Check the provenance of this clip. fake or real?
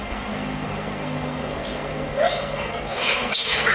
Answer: fake